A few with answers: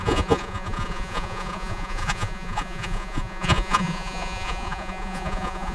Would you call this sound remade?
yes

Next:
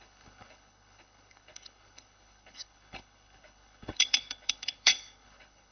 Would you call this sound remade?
yes